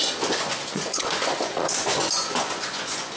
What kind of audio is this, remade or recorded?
remade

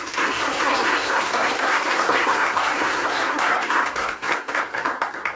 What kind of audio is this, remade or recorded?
remade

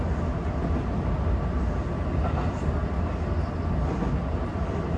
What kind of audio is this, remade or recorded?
recorded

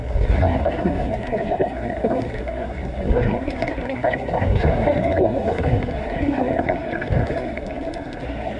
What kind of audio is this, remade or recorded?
remade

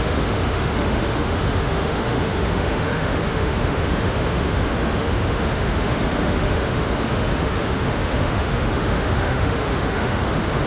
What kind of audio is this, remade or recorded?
remade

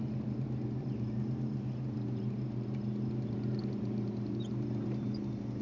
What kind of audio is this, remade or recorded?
remade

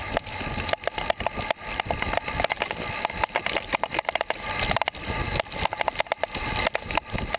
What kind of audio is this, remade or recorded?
recorded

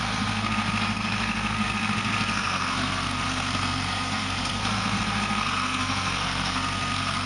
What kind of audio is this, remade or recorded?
remade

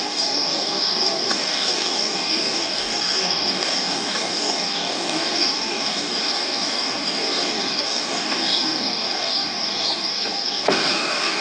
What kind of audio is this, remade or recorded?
remade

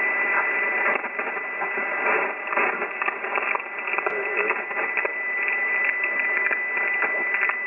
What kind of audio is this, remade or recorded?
recorded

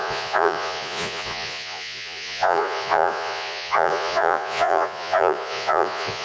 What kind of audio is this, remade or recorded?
remade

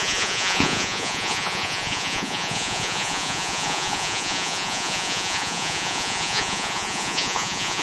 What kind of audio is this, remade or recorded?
remade